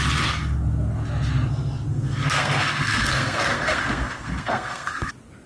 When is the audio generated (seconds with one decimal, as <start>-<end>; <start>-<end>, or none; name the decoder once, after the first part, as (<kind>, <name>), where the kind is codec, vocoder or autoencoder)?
1.9-5.1 (codec, SNAC)